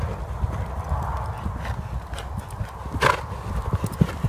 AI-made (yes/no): no